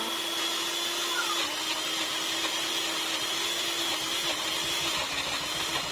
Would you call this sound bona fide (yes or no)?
yes